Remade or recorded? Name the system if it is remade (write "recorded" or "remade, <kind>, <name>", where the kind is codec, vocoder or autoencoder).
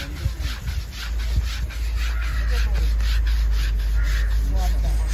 recorded